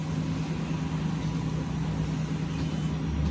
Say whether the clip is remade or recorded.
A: recorded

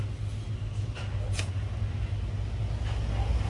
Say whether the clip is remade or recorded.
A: recorded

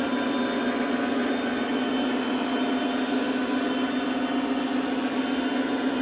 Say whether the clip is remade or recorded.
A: recorded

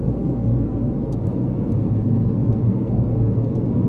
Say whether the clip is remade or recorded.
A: remade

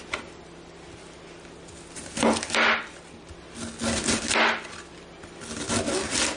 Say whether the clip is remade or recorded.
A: recorded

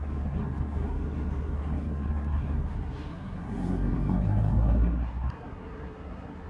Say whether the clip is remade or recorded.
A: remade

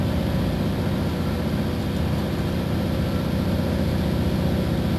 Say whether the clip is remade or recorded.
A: recorded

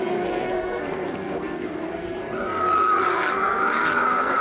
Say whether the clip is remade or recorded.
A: remade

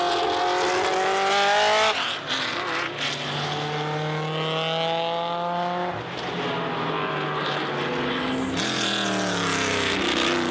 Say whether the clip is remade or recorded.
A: recorded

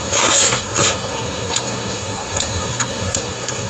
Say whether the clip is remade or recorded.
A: remade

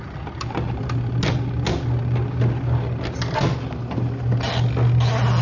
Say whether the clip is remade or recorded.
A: recorded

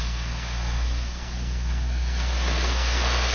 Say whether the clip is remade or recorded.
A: remade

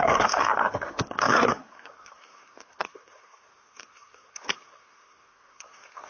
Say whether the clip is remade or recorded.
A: remade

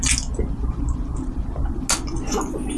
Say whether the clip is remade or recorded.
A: recorded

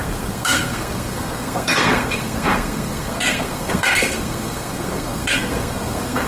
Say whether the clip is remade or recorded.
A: remade